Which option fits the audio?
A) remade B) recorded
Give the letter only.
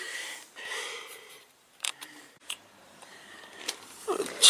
A